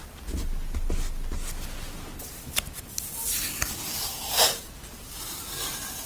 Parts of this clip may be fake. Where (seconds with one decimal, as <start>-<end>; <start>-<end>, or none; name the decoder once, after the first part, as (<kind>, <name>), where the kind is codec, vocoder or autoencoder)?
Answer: none